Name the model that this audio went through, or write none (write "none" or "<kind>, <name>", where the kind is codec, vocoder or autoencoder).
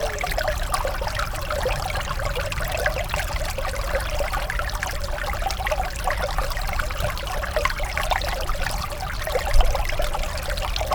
none